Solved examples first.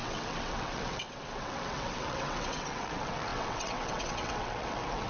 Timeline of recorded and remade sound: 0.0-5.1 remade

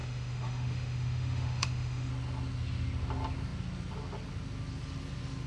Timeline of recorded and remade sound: 0.0-2.1 remade; 2.1-5.5 recorded

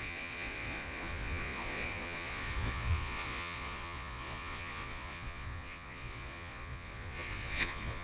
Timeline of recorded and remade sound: 0.0-8.0 remade

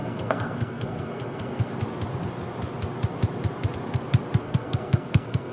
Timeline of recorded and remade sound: 0.0-1.7 remade; 1.7-4.4 recorded; 4.4-5.5 remade